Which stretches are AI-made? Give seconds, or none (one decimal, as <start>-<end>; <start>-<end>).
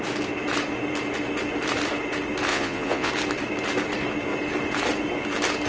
2.5-3.1